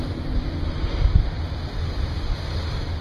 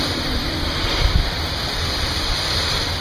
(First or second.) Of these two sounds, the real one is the first